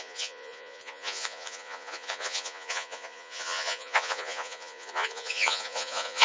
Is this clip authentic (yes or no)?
no